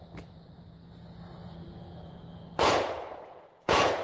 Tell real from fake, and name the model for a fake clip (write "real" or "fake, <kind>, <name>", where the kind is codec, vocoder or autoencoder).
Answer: fake, vocoder, Vocos